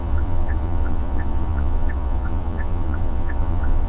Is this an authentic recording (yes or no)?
no